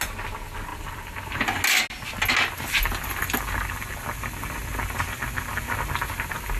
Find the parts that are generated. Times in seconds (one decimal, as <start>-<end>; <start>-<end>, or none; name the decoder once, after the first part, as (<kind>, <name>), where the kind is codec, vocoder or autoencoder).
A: none